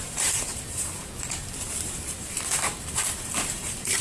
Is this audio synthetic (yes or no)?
yes